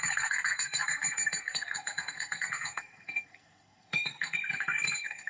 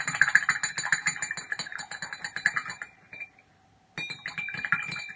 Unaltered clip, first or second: second